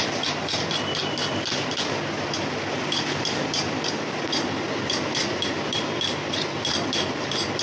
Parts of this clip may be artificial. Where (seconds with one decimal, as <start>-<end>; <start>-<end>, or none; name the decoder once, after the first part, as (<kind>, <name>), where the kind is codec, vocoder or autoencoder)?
0.0-7.6 (vocoder, BigVGAN v2)